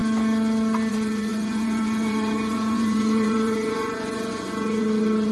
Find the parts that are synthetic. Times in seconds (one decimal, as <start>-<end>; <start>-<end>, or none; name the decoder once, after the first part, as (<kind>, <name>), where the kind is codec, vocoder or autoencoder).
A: 0.9-5.3 (vocoder, Vocos)